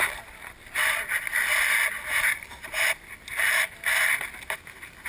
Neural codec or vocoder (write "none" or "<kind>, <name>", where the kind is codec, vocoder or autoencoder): none